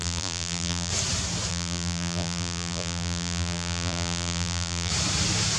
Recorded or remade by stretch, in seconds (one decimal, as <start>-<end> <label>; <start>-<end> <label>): 0.0-0.9 remade; 0.9-1.5 recorded; 1.5-4.9 remade; 4.9-5.6 recorded